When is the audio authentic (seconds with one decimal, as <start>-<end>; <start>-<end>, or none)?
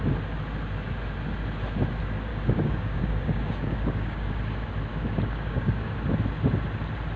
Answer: 0.0-2.3; 4.3-4.9; 5.9-7.2